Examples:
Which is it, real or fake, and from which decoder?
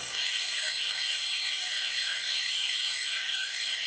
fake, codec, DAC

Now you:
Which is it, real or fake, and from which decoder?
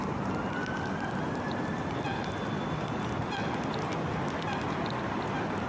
real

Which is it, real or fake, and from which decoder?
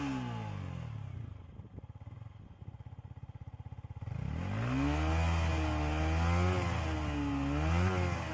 real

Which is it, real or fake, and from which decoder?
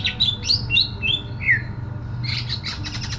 real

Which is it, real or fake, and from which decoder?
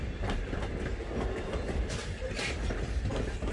real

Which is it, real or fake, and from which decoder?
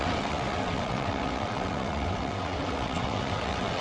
fake, vocoder, WaveNeXt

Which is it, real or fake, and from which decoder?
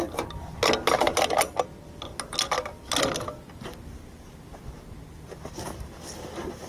real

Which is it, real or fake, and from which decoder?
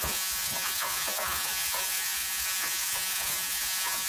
fake, vocoder, Vocos